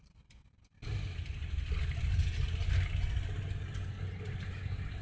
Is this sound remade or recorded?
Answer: recorded